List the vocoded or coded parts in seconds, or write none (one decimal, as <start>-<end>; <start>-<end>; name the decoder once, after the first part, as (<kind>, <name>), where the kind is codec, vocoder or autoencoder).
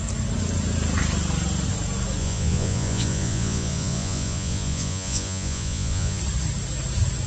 2.2-6.2 (vocoder, Vocos)